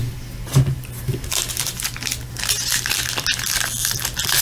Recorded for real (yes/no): yes